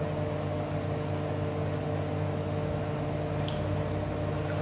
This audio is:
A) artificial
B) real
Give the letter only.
B